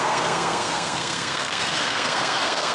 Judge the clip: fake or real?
fake